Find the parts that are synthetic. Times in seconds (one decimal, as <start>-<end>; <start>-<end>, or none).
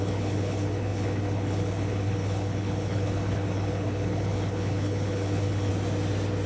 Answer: 0.0-5.7